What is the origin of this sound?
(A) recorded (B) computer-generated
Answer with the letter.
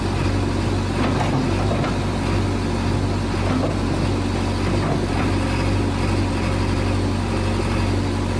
A